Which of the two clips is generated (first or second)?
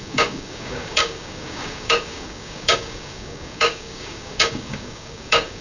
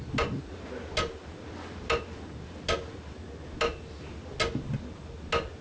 first